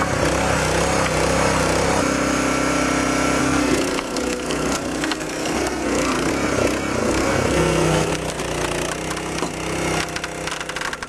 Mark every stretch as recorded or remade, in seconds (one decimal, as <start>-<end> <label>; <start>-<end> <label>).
0.0-3.4 recorded; 3.4-6.3 remade; 6.3-7.0 recorded; 7.0-8.1 remade; 8.1-11.1 recorded